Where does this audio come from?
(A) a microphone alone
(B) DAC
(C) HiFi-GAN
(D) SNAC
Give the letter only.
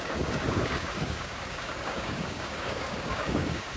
B